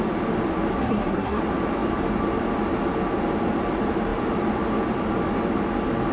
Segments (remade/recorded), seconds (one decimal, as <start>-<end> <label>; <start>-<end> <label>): 0.0-0.8 recorded; 0.8-1.4 remade; 1.4-6.1 recorded